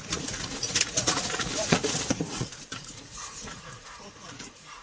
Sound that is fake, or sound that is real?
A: fake